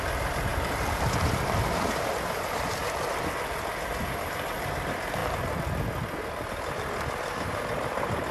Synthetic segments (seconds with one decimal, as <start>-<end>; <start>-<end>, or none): 0.0-5.2; 6.3-8.3